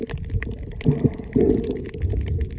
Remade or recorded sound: recorded